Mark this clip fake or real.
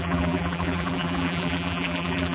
fake